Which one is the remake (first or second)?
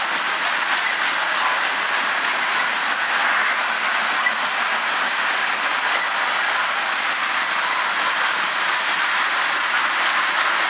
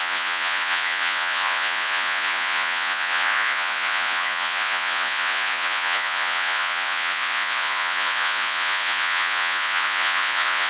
second